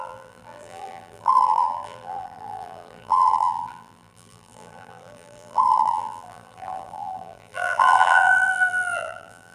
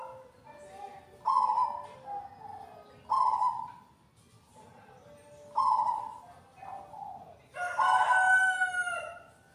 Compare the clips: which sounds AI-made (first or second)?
first